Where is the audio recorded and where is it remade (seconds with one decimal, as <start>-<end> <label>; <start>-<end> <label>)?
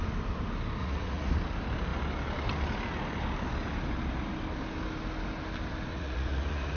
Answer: 0.0-0.8 recorded; 0.8-1.3 remade; 1.3-5.9 recorded; 5.9-6.8 remade